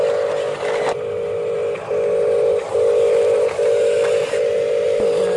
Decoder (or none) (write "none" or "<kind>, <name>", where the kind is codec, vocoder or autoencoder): none